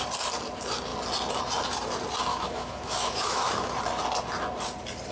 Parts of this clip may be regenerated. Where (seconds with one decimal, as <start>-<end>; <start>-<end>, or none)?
2.3-3.8